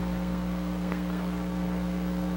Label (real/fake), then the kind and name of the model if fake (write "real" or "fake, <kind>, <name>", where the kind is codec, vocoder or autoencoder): fake, codec, SNAC